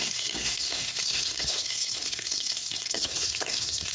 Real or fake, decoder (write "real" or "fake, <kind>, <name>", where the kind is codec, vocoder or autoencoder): fake, codec, SNAC